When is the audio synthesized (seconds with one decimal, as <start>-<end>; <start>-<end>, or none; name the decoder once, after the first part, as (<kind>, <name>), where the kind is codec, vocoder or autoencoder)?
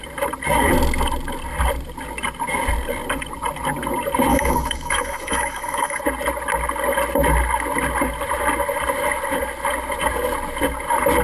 4.3-6.0 (autoencoder, DAC-VAE)